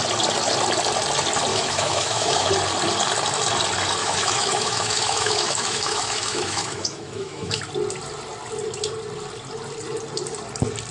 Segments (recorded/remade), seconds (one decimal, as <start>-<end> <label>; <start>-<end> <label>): 0.0-1.5 recorded; 1.5-2.5 remade; 2.5-4.0 recorded; 4.0-7.6 remade; 7.6-10.9 recorded